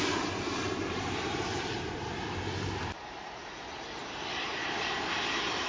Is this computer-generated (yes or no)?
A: yes